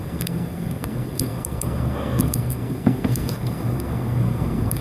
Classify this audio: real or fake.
fake